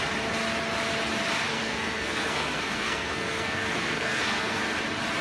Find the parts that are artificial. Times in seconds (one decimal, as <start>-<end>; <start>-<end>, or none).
1.5-4.6

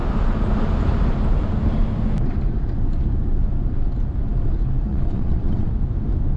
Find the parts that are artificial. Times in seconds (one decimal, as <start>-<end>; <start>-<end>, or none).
4.9-5.7